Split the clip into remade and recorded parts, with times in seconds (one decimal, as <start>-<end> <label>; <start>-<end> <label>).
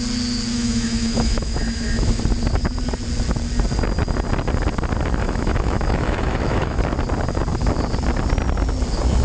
0.0-0.5 recorded; 0.5-2.2 remade; 2.2-5.2 recorded; 5.2-6.8 remade; 6.8-9.2 recorded